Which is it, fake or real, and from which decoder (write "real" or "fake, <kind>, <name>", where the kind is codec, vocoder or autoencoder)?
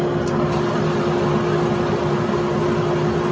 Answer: real